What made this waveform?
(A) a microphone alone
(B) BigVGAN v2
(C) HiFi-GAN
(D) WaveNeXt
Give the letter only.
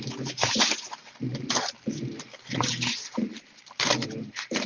B